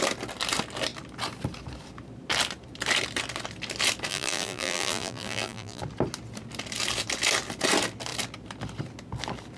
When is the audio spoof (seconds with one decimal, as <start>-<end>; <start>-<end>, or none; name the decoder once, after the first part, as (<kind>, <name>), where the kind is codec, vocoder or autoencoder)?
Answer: 4.1-5.8 (vocoder, BigVGAN v2)

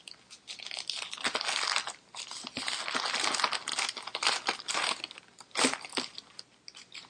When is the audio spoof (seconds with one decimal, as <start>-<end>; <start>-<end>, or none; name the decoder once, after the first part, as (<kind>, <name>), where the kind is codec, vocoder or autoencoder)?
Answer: none

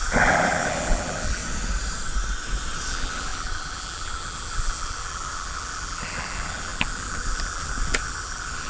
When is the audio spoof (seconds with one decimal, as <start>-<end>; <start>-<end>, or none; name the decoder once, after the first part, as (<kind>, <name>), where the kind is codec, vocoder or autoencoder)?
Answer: 0.0-1.4 (vocoder, BigVGAN v2); 2.9-8.7

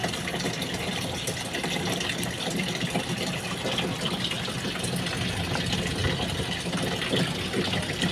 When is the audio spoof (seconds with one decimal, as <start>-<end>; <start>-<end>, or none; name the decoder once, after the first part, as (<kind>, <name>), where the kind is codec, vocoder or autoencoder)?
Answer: 0.0-4.4 (vocoder, BigVGAN v2)